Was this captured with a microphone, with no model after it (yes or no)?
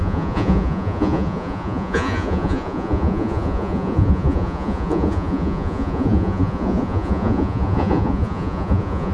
no